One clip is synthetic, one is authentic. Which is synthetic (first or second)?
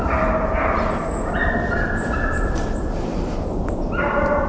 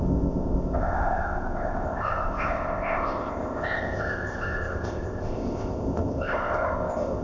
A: second